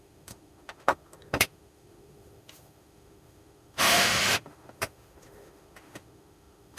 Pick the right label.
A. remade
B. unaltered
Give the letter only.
A